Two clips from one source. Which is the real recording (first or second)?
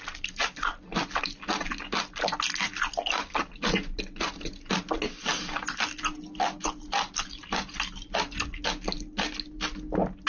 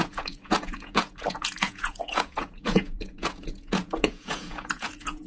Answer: first